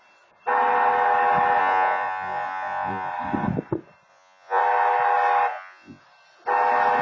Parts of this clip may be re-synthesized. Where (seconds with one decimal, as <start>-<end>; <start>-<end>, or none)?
1.6-3.1; 4.1-4.6; 5.5-6.0

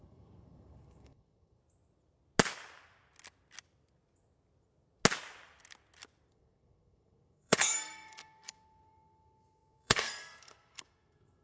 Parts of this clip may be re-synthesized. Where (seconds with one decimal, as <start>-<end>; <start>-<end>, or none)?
0.0-1.6; 6.3-11.4

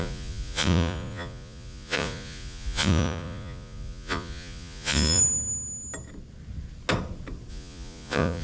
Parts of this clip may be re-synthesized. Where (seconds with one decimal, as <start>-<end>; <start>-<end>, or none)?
0.0-5.2; 7.5-8.4

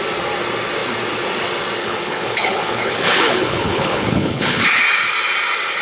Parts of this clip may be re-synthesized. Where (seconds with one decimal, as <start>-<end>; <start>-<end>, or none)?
1.8-4.8

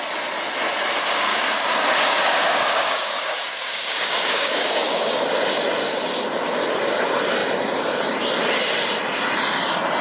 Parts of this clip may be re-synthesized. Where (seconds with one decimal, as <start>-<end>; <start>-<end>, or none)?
1.3-5.2

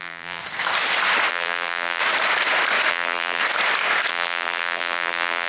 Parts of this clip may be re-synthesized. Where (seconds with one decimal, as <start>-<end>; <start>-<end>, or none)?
0.0-0.4; 1.3-2.0; 2.9-3.4; 4.1-5.5